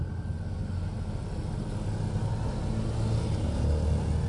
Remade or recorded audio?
recorded